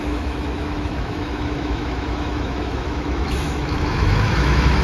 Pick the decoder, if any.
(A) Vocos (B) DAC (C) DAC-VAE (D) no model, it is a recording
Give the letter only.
C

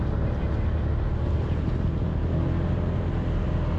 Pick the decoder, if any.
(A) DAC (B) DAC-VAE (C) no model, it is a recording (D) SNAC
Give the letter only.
C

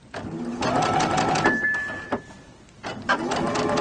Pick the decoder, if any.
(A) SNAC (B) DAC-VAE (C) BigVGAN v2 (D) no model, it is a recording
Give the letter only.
D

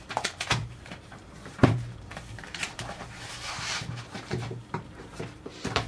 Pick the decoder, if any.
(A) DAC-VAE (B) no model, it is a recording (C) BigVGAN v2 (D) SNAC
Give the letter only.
C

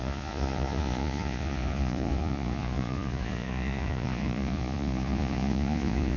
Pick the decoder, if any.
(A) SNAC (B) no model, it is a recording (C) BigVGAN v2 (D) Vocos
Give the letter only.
D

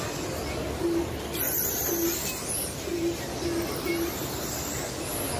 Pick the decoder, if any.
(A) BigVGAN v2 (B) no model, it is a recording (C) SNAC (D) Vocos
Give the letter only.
B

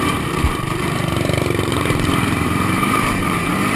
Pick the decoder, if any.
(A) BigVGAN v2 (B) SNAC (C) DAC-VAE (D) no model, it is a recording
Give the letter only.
A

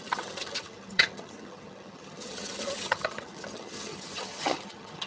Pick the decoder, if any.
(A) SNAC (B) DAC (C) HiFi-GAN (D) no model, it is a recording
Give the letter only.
C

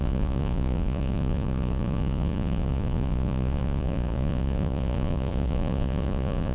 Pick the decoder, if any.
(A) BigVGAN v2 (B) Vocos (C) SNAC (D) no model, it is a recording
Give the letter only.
B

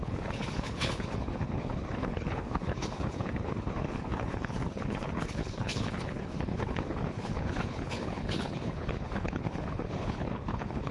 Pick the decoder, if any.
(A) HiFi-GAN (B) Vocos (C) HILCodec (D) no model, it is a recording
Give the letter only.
C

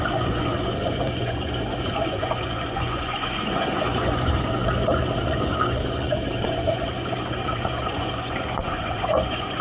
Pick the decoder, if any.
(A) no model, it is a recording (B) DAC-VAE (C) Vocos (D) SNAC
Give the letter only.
C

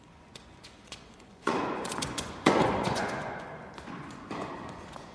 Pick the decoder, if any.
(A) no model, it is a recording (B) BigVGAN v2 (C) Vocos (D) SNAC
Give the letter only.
C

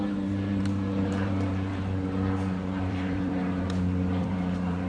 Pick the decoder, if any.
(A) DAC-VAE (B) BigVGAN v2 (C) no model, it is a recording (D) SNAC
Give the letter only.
B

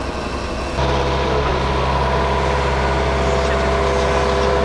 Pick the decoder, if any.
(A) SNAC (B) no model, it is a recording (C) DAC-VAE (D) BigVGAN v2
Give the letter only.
B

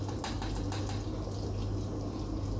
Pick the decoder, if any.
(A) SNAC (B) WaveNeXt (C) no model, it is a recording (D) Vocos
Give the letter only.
C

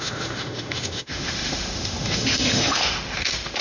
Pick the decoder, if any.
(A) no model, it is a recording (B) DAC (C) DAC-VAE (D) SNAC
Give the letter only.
C